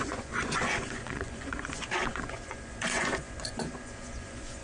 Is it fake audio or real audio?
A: fake